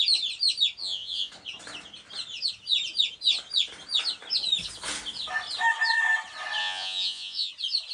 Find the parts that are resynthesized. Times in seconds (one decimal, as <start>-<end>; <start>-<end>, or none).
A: 0.8-1.3; 6.6-7.5